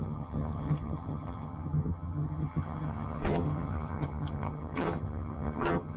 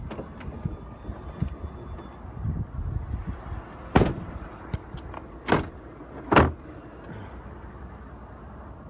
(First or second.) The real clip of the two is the second